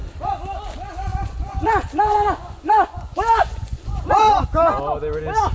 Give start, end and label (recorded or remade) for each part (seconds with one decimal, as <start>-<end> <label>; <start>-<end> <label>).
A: 0.0-1.1 recorded; 1.1-4.4 remade; 4.4-5.5 recorded